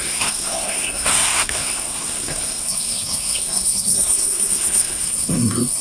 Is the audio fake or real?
fake